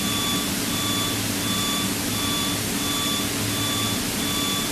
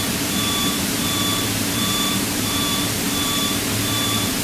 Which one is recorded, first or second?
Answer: first